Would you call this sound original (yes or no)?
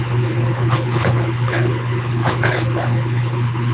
no